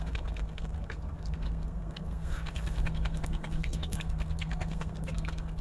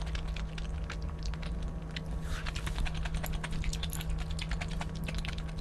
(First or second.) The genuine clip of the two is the second